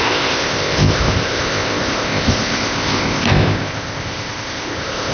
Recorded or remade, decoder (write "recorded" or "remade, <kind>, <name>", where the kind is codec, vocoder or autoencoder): remade, codec, ZipCodec